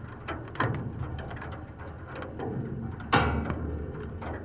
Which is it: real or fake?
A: real